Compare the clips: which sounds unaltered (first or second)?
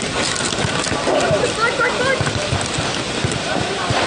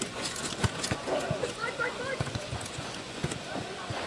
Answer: first